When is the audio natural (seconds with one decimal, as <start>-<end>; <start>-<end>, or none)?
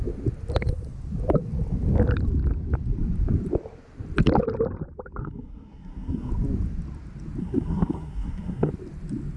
0.0-5.2; 6.3-7.4; 8.7-9.4